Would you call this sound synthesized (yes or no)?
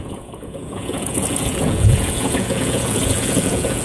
yes